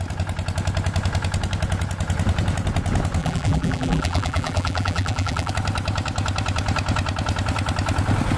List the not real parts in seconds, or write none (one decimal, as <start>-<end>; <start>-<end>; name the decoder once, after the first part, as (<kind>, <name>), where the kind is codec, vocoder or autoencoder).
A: 3.2-5.5 (vocoder, BigVGAN v2)